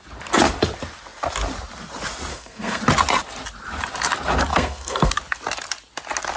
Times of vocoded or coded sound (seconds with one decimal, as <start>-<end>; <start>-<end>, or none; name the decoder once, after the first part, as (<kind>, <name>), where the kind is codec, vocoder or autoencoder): 2.3-2.8 (codec, SNAC); 4.5-5.1